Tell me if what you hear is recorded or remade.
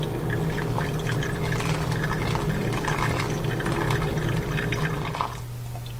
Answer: recorded